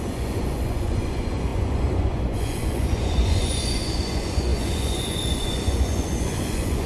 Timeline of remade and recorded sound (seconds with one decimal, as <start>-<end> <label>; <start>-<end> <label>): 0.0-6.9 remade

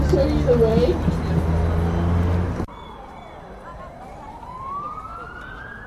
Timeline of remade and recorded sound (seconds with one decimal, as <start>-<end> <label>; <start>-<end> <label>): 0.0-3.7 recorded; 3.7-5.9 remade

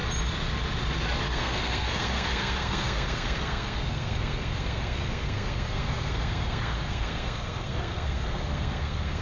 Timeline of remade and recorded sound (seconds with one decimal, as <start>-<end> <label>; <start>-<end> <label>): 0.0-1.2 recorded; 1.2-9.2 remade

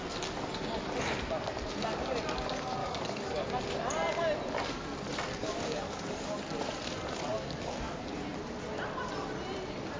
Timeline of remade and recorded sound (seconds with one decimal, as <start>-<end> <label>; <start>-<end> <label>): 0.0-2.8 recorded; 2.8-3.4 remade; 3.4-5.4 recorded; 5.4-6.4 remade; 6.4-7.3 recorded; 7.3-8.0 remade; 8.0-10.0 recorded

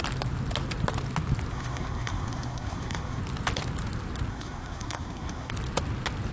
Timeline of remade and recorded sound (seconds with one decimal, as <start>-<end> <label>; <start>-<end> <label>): 0.0-1.5 recorded; 1.5-3.2 remade; 3.2-4.3 recorded; 4.3-5.5 remade; 5.5-6.3 recorded

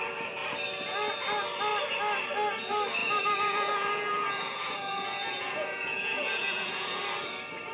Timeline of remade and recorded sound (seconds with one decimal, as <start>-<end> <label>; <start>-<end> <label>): 0.0-3.0 recorded; 3.0-7.0 remade; 7.0-7.7 recorded